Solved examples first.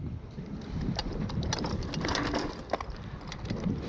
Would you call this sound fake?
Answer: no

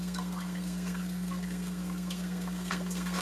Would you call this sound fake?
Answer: yes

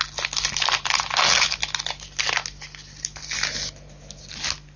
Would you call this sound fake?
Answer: no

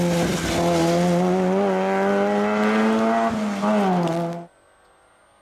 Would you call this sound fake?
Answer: no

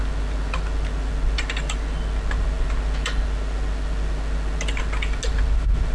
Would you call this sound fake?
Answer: no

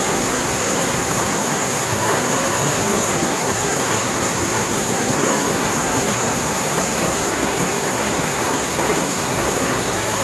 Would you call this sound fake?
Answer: yes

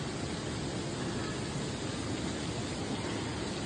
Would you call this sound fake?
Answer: no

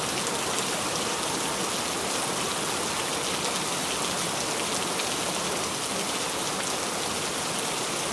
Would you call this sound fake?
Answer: no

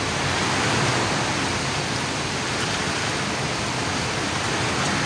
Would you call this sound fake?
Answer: no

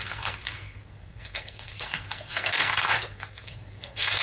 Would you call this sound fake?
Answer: yes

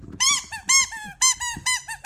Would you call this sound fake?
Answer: no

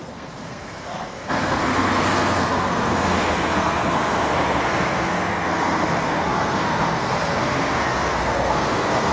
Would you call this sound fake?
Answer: yes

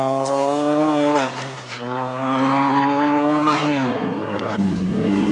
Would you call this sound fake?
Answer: yes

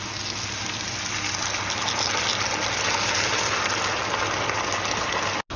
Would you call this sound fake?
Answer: no